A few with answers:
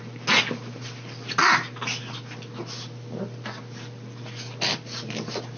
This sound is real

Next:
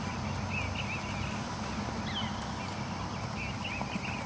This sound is real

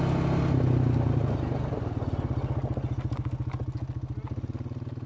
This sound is real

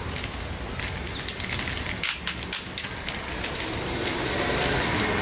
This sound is real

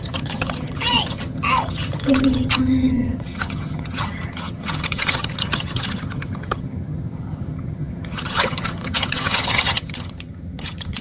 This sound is fake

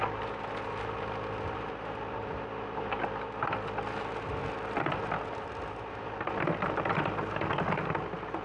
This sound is real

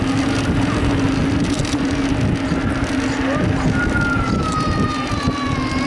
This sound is real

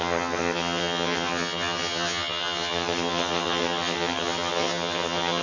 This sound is fake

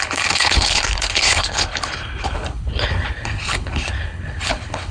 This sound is fake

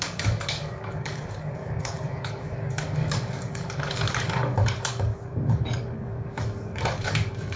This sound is fake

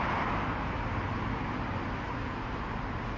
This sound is real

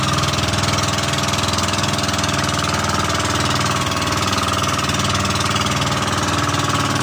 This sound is real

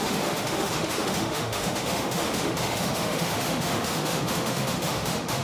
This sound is fake